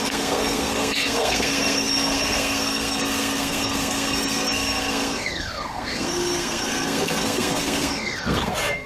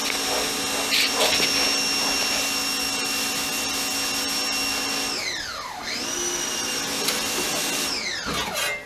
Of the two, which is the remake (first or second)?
first